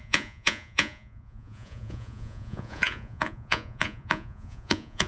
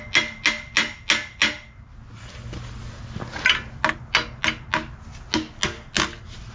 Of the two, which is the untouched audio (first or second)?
second